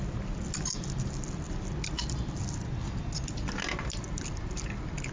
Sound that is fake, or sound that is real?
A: real